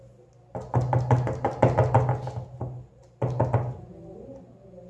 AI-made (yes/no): no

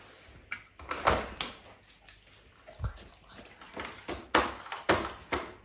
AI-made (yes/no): no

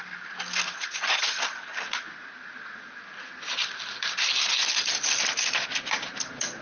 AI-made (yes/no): no